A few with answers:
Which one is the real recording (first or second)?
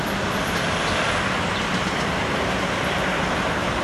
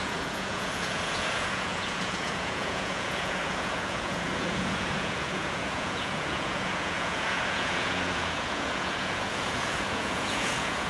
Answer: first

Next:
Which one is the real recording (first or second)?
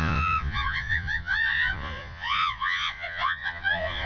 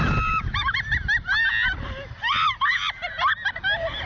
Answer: second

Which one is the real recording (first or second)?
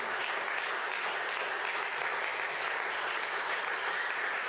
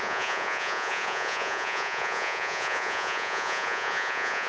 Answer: first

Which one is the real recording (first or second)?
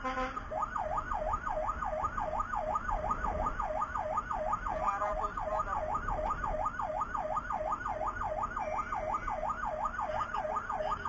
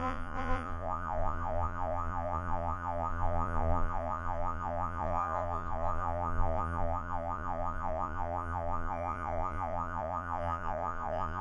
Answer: first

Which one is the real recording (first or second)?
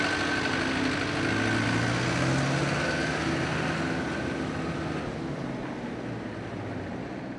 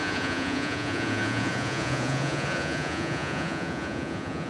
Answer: first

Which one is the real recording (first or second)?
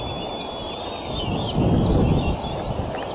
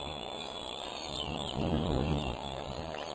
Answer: first